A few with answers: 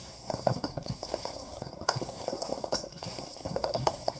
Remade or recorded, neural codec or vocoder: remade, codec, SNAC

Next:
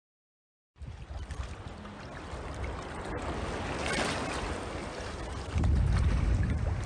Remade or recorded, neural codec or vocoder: recorded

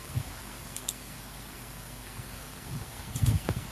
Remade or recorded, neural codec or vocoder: remade, codec, SNAC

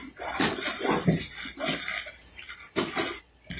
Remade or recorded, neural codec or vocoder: recorded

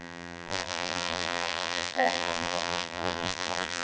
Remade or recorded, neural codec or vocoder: remade, vocoder, BigVGAN v2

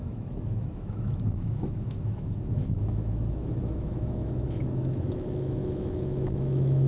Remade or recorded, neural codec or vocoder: remade, autoencoder, DAC-VAE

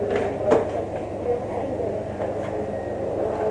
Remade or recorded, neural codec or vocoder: recorded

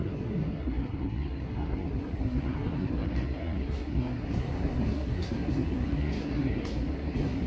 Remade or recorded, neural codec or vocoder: remade, codec, SNAC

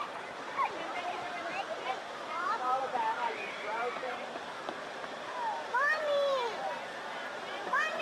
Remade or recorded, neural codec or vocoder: remade, vocoder, BigVGAN v2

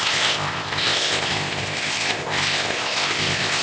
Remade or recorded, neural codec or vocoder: remade, codec, ZipCodec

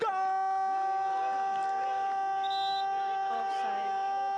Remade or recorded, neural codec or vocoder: recorded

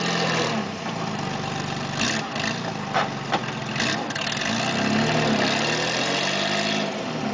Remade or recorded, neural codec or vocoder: recorded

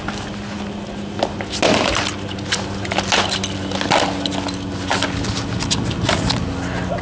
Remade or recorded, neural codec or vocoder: recorded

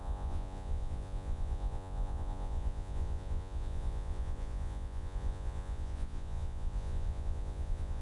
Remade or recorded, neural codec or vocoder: remade, vocoder, Vocos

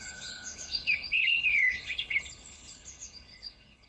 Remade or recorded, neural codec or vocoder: remade, codec, HILCodec